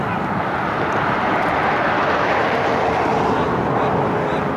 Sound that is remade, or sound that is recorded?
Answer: recorded